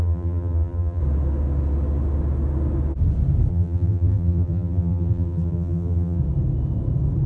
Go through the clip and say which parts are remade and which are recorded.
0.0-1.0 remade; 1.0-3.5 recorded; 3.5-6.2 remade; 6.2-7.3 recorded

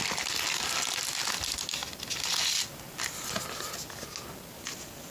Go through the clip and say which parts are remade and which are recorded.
0.0-5.1 recorded

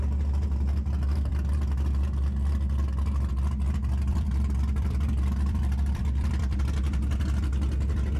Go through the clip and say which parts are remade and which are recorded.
0.0-4.1 recorded; 4.1-6.6 remade; 6.6-8.2 recorded